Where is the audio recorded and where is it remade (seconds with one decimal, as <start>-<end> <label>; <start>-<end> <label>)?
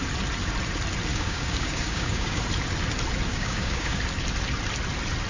0.0-1.1 recorded; 1.1-2.4 remade; 2.4-3.3 recorded; 3.3-4.0 remade; 4.0-5.3 recorded